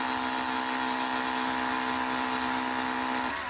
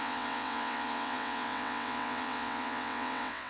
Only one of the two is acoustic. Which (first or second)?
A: first